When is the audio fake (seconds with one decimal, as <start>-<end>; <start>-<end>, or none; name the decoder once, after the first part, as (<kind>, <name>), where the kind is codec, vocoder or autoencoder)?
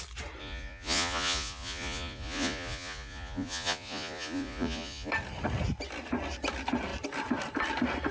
0.4-5.1 (vocoder, Vocos)